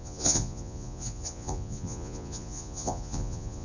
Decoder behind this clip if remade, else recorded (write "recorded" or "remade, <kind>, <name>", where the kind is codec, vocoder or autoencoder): remade, vocoder, Vocos